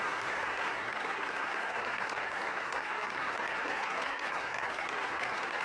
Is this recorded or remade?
remade